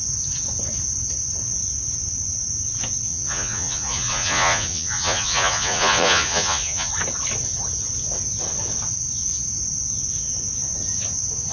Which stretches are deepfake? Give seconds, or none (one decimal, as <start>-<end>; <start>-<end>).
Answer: 3.1-6.9